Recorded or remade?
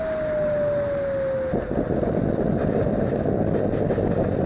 recorded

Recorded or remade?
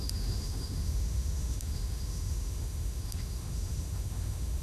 remade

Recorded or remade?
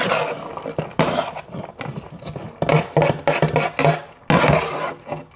recorded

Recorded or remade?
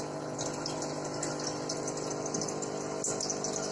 recorded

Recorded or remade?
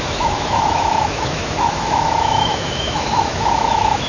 remade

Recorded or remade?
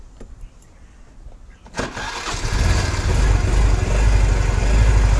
recorded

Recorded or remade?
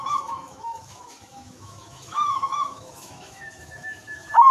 remade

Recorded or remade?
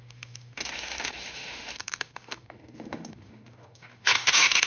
remade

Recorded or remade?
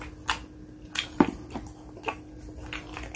recorded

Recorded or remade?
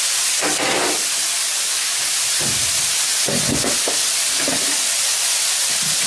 recorded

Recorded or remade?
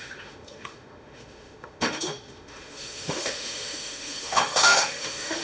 remade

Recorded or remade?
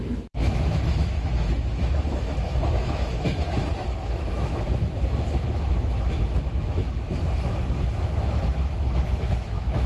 remade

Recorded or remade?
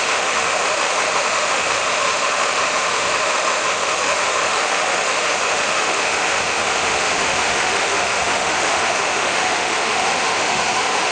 remade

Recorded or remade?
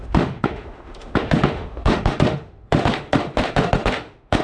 remade